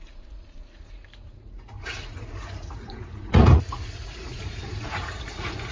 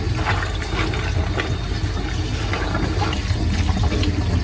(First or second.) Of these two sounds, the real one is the second